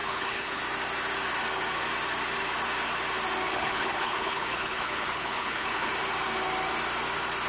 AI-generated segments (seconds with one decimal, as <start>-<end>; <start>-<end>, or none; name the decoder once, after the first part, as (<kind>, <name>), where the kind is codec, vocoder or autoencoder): 0.0-0.6 (codec, HILCodec); 3.5-5.9